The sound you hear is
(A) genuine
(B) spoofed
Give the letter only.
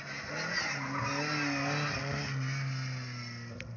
A